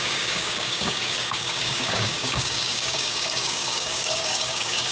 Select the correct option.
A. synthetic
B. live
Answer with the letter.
A